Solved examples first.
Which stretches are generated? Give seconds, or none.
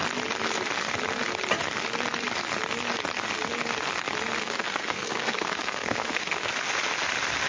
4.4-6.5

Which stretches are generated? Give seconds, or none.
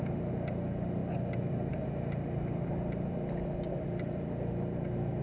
none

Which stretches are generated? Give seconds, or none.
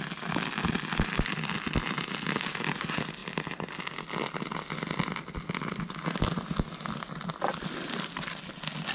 none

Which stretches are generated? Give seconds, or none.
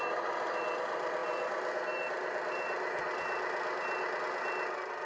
none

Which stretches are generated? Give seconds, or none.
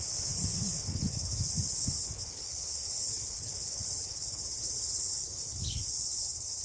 0.0-6.6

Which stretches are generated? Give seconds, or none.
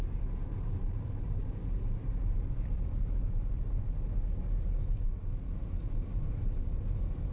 1.4-3.8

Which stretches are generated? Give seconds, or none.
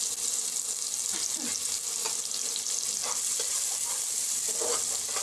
none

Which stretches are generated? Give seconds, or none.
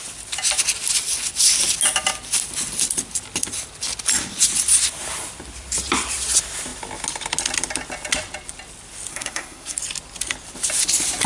9.1-9.8